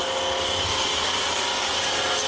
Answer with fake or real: real